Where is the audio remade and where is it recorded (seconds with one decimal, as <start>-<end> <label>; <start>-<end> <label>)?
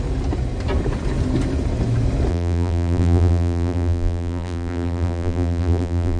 0.0-2.3 recorded; 2.3-6.2 remade